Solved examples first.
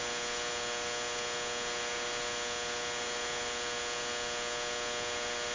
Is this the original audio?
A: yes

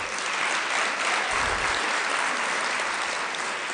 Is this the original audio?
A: yes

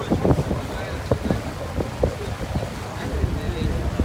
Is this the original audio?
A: yes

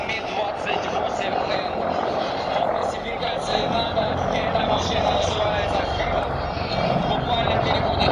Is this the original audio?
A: yes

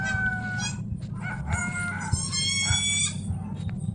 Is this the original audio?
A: yes